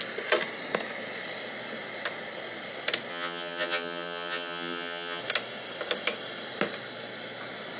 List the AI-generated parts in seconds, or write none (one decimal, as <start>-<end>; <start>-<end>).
3.1-5.2

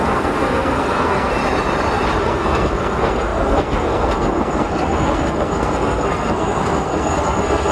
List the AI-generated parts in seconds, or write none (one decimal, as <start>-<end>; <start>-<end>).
0.0-1.4; 2.2-7.7

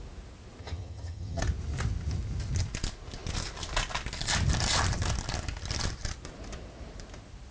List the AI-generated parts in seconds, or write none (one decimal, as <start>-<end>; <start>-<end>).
0.6-1.4

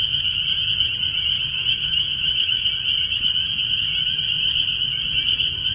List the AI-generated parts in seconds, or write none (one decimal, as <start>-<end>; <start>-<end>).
1.5-2.7

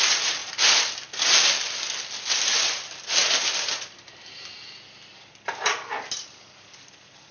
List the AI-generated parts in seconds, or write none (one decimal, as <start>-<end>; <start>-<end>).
none